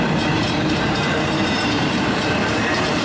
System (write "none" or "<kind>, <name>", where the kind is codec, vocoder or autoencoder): vocoder, BigVGAN v2